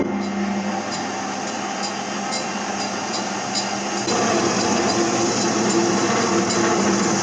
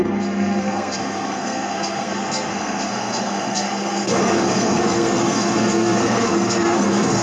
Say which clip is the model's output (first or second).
second